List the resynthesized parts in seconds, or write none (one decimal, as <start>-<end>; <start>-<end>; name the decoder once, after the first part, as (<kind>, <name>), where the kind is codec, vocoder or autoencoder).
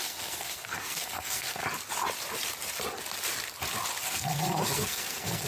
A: 0.0-1.6 (codec, SNAC); 4.0-5.5